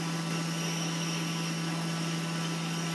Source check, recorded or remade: recorded